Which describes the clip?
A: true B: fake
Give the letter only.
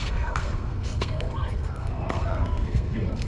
B